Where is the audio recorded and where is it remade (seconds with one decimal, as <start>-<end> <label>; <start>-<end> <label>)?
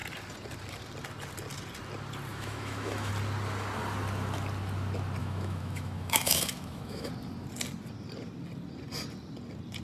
0.0-2.3 recorded; 2.3-3.1 remade; 3.1-5.2 recorded; 5.2-7.1 remade; 7.1-9.8 recorded